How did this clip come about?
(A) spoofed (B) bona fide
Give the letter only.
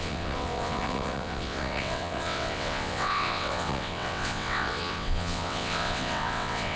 A